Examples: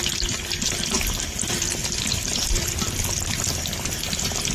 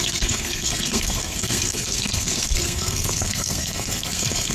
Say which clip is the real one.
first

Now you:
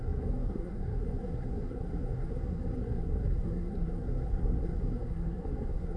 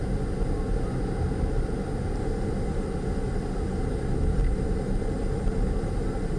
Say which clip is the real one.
second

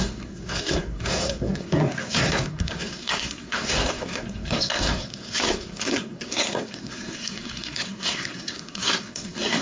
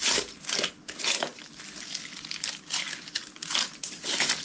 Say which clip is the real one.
second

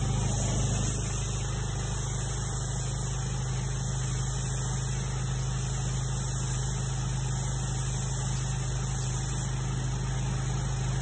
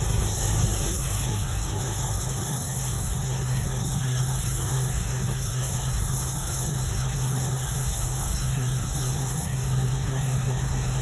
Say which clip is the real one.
first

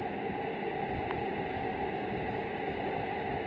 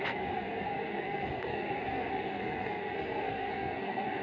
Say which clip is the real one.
first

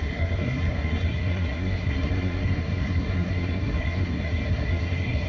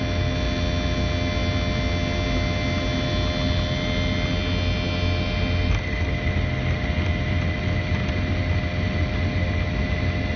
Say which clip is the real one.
second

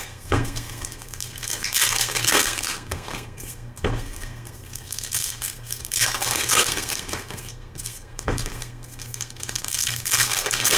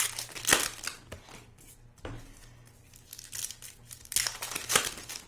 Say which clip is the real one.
second